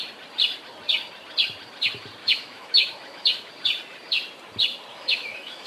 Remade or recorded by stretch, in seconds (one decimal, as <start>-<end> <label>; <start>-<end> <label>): 0.0-2.2 recorded; 2.2-3.5 remade; 3.5-4.9 recorded; 4.9-5.7 remade